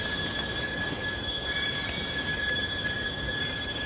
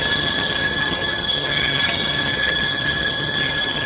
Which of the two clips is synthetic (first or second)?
second